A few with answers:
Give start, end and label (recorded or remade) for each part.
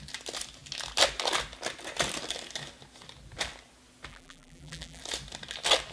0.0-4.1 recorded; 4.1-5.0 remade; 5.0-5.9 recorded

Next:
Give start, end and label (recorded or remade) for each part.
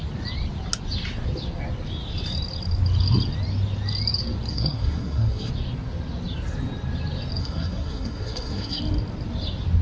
0.0-4.5 recorded; 4.5-5.5 remade; 5.5-7.4 recorded; 7.4-8.8 remade; 8.8-9.8 recorded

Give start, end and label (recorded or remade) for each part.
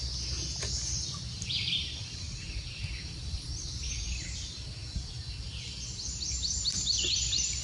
0.0-7.6 recorded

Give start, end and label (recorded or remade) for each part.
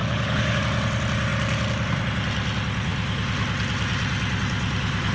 0.0-0.6 remade; 0.6-5.1 recorded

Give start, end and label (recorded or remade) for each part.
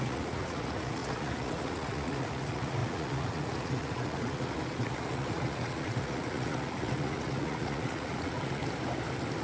0.0-8.6 remade; 8.6-9.4 recorded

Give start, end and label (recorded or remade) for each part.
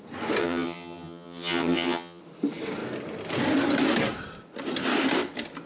0.0-0.4 recorded; 0.4-2.2 remade; 2.2-5.7 recorded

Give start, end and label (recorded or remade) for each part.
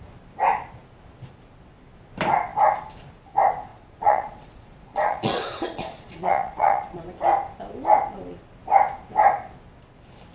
0.0-3.7 recorded; 3.7-7.0 remade; 7.0-10.3 recorded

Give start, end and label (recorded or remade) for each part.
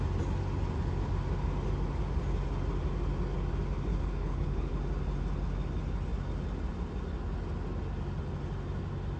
0.0-3.9 recorded; 3.9-4.7 remade; 4.7-9.2 recorded